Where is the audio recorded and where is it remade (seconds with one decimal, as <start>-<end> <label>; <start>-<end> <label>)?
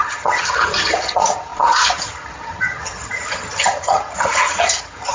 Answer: 0.0-5.1 remade